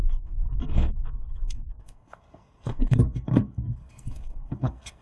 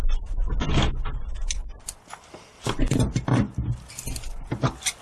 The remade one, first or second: first